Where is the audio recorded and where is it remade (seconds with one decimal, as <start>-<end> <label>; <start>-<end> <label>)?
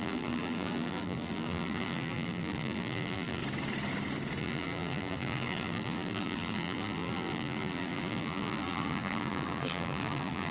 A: 0.0-3.4 remade; 3.4-4.4 recorded; 4.4-10.5 remade